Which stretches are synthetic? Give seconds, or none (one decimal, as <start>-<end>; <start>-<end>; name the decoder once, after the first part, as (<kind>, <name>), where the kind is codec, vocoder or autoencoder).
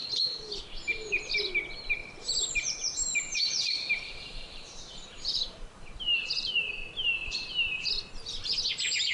0.0-0.6 (vocoder, BigVGAN v2); 2.0-6.7; 7.2-7.9